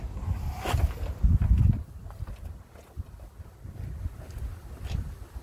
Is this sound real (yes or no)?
yes